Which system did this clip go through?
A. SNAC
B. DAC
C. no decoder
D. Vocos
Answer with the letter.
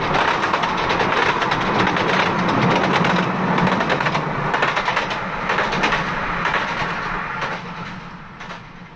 C